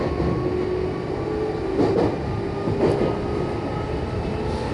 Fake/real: real